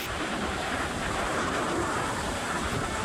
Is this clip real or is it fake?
fake